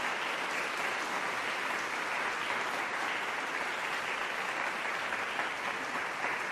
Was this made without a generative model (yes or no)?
yes